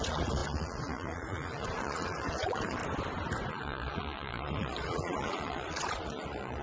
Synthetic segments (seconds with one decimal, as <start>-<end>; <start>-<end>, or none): 0.0-2.8; 3.5-6.6